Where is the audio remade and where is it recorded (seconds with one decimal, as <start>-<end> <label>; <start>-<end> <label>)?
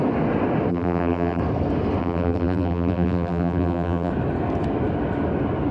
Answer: 0.0-0.7 recorded; 0.7-1.4 remade; 1.4-2.0 recorded; 2.0-4.1 remade; 4.1-5.7 recorded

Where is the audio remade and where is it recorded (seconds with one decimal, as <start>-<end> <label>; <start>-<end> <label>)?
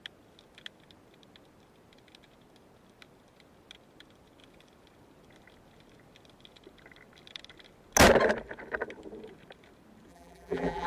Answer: 0.0-10.1 recorded; 10.1-10.9 remade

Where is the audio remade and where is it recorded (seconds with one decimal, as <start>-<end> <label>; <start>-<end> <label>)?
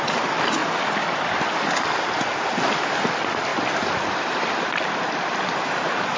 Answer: 0.0-6.2 recorded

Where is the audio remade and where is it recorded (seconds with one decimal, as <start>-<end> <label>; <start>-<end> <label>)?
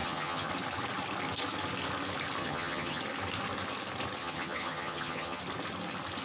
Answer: 0.0-0.5 remade; 0.5-2.4 recorded; 2.4-3.0 remade; 3.0-4.2 recorded; 4.2-5.4 remade; 5.4-6.2 recorded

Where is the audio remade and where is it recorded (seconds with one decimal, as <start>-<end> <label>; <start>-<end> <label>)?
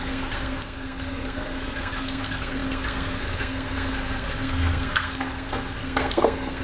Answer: 0.0-6.6 remade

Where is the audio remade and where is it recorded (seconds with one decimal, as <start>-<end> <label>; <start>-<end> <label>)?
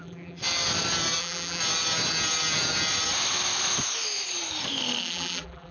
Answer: 0.0-0.4 remade; 0.4-1.2 recorded; 1.2-1.6 remade; 1.6-5.0 recorded; 5.0-5.7 remade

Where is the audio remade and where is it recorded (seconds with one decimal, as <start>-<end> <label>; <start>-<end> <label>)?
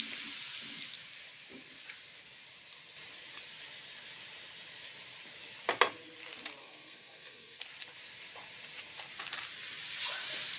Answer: 0.0-6.6 recorded; 6.6-7.6 remade; 7.6-10.6 recorded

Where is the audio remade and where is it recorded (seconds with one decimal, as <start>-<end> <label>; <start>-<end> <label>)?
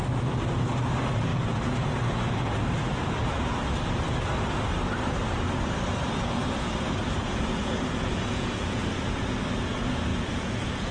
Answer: 0.0-7.2 recorded; 7.2-8.8 remade; 8.8-10.1 recorded; 10.1-10.9 remade